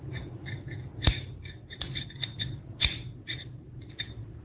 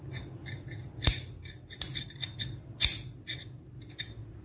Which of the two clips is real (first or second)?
second